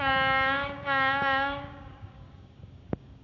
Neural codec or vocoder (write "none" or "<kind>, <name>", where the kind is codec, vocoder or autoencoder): codec, DAC